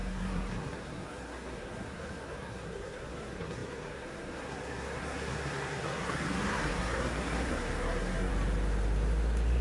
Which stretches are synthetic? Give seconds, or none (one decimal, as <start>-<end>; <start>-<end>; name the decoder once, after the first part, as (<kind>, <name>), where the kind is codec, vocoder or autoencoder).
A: 0.0-8.3 (codec, SNAC)